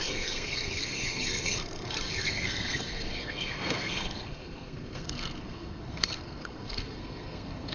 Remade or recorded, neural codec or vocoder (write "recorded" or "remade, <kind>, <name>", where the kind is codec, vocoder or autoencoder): remade, codec, SNAC